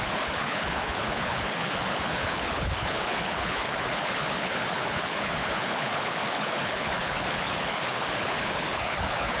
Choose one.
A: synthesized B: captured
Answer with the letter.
A